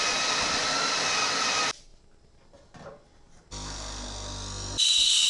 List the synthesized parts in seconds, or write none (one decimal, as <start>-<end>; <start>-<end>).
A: none